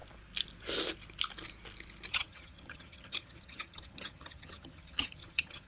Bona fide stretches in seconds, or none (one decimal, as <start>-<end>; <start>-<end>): 0.0-2.1